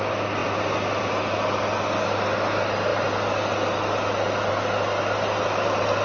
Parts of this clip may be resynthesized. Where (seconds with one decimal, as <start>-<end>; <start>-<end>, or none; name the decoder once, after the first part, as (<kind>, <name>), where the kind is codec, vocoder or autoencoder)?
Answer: none

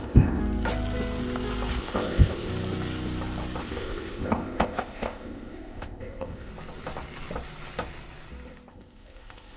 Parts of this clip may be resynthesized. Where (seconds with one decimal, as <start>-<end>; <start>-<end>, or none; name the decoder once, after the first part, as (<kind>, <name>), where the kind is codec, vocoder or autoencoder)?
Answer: 0.0-0.4 (codec, ZipCodec); 1.8-2.5; 3.6-6.5; 8.7-9.6